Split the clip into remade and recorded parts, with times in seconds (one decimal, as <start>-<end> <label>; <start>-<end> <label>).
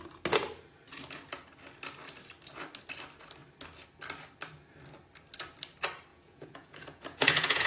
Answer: 0.0-6.1 recorded; 6.1-7.7 remade